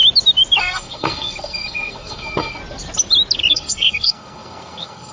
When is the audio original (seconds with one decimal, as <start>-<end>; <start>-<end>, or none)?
0.0-0.6; 2.6-3.5